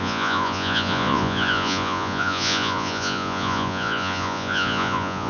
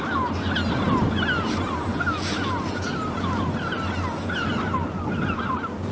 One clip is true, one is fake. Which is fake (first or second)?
first